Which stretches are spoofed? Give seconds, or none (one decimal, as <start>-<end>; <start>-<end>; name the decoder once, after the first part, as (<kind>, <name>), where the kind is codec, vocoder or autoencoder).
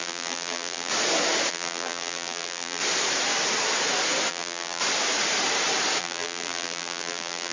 0.0-0.9 (vocoder, BigVGAN v2); 1.5-2.8; 4.3-4.8; 6.0-7.5